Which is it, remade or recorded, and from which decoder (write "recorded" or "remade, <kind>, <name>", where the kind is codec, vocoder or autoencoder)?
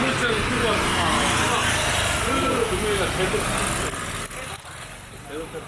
recorded